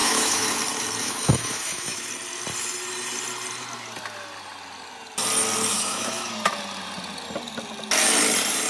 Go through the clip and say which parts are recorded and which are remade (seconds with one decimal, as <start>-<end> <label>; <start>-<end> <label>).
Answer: 0.0-0.6 remade; 0.6-1.0 recorded; 1.0-2.1 remade; 2.1-5.7 recorded; 5.7-6.3 remade; 6.3-8.7 recorded